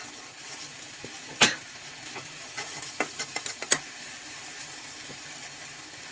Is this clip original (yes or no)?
yes